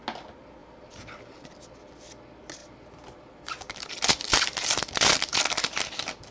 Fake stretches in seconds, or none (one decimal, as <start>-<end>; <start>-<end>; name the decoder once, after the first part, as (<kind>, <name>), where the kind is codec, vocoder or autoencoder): 0.6-1.6 (vocoder, BigVGAN v2)